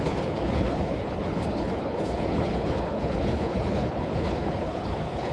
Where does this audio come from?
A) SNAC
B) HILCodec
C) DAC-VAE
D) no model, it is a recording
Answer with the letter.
B